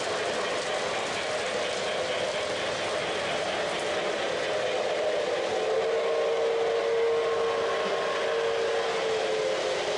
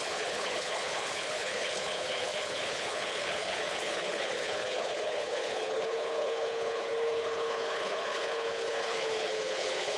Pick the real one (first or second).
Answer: first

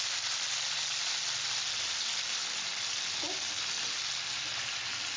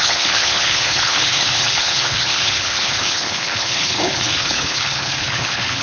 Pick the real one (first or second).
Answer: first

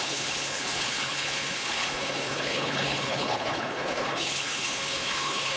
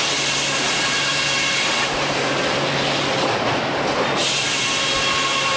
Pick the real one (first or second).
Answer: second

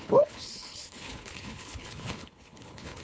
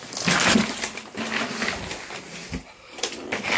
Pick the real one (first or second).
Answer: second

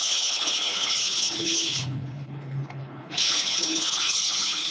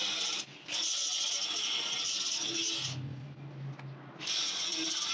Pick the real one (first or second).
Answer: second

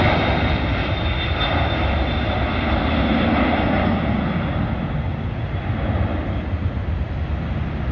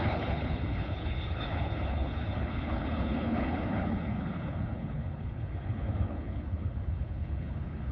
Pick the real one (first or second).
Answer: first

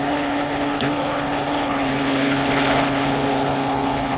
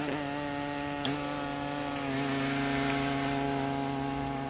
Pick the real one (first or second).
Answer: second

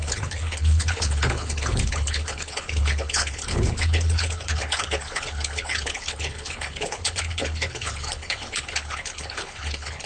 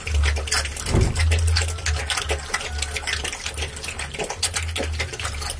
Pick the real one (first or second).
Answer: second